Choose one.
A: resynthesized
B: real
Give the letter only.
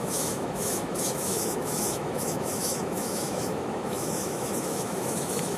A